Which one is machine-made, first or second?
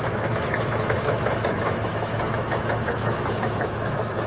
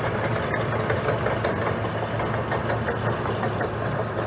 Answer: first